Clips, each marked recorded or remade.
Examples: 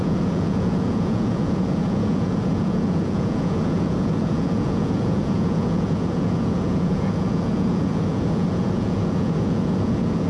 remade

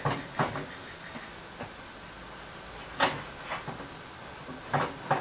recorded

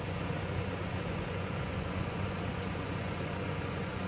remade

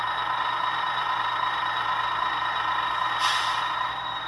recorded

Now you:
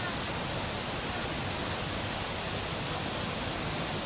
recorded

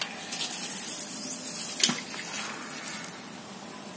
recorded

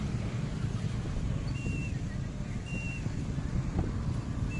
recorded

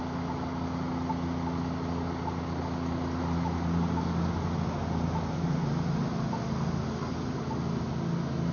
recorded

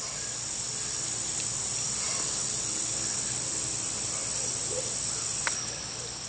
recorded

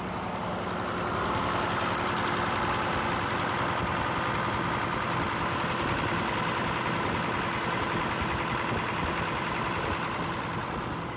recorded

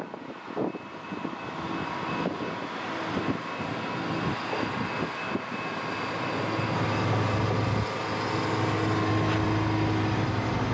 recorded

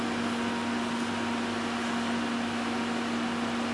recorded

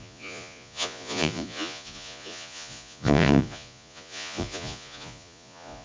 remade